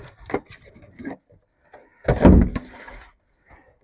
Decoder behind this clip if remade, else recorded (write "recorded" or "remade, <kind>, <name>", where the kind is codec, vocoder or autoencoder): recorded